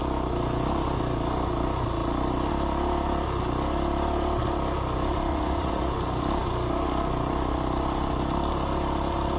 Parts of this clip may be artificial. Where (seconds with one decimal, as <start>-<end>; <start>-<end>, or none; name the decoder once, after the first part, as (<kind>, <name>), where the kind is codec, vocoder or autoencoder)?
5.3-5.9 (vocoder, Vocos)